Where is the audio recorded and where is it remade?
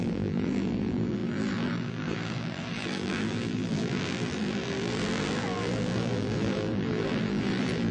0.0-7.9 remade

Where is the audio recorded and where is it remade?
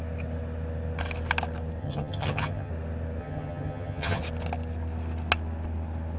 0.0-1.8 recorded; 1.8-2.7 remade; 2.7-3.2 recorded; 3.2-4.2 remade; 4.2-6.2 recorded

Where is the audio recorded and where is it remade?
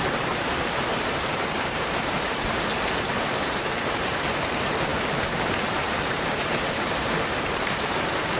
0.0-2.7 remade; 2.7-3.2 recorded; 3.2-8.4 remade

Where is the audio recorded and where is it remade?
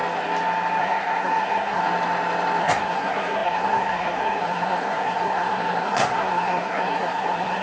0.0-0.8 recorded; 0.8-1.8 remade; 1.8-2.6 recorded; 2.6-7.6 remade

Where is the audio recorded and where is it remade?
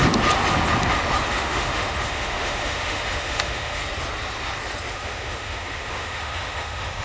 0.0-1.3 recorded; 1.3-3.8 remade; 3.8-4.9 recorded; 4.9-7.0 remade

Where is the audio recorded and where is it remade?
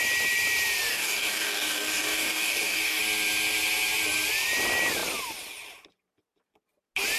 0.0-0.9 recorded; 0.9-3.0 remade; 3.0-7.2 recorded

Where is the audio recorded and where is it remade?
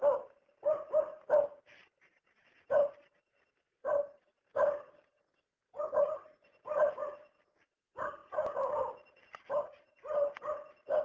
0.0-11.0 recorded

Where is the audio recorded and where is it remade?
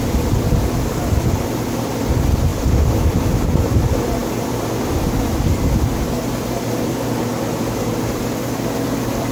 0.0-9.3 remade